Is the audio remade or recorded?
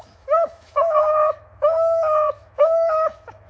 remade